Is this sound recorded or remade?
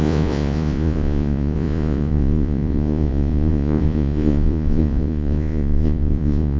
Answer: remade